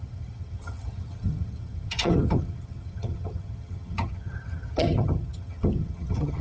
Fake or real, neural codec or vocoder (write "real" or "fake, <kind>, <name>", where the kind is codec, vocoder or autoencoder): fake, vocoder, HiFi-GAN